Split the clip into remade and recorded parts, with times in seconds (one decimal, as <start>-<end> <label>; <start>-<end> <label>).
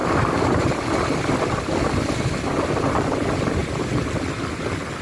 0.0-3.0 remade; 3.0-3.6 recorded; 3.6-4.3 remade; 4.3-5.0 recorded